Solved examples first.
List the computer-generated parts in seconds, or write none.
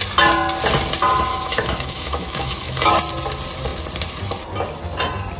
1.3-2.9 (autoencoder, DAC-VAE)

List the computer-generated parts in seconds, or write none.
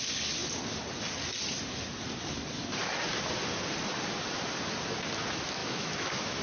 5.6-6.4 (autoencoder, DAC-VAE)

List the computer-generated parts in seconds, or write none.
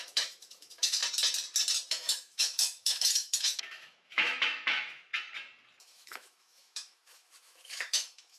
0.0-1.0 (autoencoder, DAC-VAE); 1.9-5.1; 5.8-8.4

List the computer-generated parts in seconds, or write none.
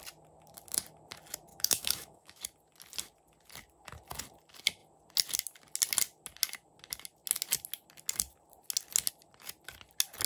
1.5-2.4 (autoencoder, DAC-VAE)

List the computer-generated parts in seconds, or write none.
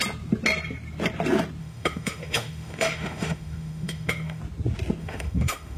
1.6-4.4 (autoencoder, DAC-VAE); 5.0-5.8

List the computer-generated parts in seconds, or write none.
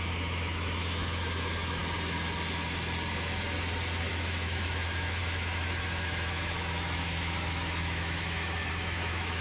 0.0-1.8 (autoencoder, DAC-VAE); 4.1-9.4